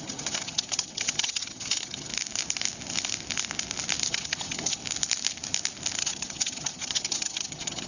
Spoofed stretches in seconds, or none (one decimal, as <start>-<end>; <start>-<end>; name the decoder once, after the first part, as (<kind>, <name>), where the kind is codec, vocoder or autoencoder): 0.0-2.1 (vocoder, HiFi-GAN); 4.1-4.8; 6.0-7.9